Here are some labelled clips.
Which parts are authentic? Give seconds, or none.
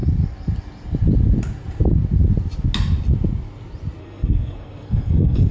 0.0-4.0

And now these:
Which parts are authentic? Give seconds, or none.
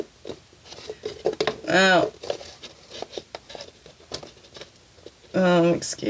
0.0-6.1